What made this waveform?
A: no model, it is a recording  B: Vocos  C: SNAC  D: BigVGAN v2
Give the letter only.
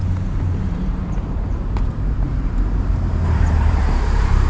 D